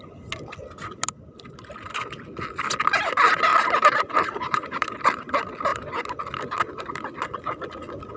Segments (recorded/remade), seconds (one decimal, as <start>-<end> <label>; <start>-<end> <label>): 0.0-3.5 recorded; 3.5-5.3 remade; 5.3-8.2 recorded

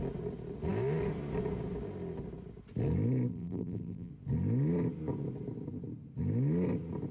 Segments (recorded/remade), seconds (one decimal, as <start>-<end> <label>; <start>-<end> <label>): 0.0-3.3 recorded; 3.3-4.1 remade; 4.1-7.1 recorded

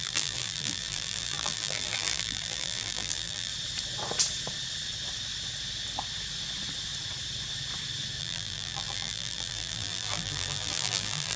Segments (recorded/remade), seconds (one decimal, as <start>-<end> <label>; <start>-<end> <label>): 0.0-3.5 remade; 3.5-8.2 recorded; 8.2-11.4 remade

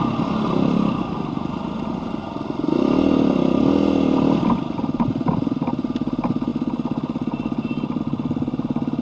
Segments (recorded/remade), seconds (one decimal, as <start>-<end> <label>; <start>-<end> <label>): 0.0-9.0 recorded